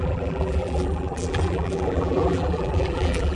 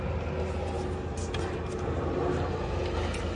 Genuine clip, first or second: second